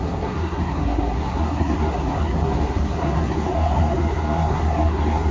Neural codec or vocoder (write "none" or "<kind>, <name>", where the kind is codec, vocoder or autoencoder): codec, SNAC